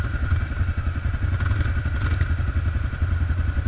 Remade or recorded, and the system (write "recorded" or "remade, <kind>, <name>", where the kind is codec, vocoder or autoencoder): recorded